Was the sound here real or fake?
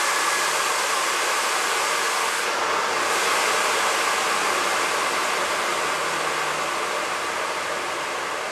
real